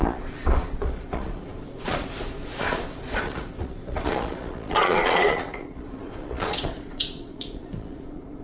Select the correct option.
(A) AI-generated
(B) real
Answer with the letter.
A